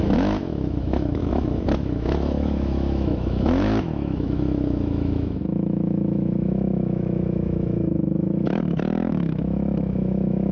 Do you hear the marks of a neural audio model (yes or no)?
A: yes